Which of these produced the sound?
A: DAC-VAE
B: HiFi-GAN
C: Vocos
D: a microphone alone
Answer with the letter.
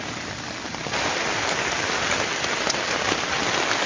D